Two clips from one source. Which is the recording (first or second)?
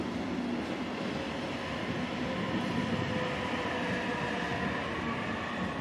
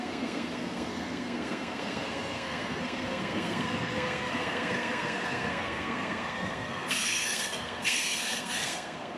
first